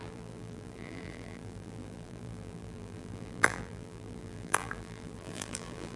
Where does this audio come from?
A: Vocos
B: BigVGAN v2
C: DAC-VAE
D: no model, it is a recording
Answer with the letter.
B